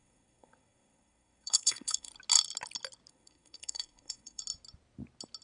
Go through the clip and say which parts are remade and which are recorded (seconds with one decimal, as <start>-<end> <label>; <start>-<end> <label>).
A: 0.0-2.1 remade; 2.1-3.1 recorded; 3.1-4.4 remade; 4.4-5.4 recorded